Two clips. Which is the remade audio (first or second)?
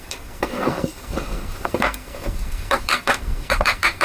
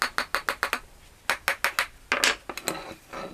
first